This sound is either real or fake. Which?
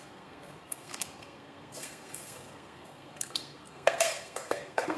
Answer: fake